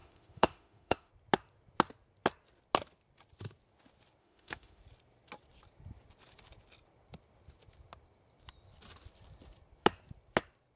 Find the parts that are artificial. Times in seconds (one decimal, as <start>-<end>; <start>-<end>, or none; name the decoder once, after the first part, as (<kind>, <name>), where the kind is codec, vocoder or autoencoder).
0.0-1.1 (autoencoder, DAC-VAE); 4.2-4.8